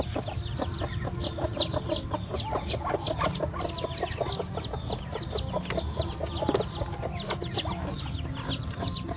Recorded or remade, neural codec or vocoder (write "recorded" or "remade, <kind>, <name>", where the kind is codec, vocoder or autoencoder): recorded